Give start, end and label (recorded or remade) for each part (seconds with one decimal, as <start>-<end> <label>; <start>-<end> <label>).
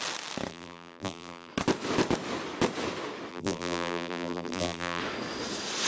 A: 0.0-0.5 recorded; 0.5-1.5 remade; 1.5-3.3 recorded; 3.3-5.0 remade; 5.0-5.9 recorded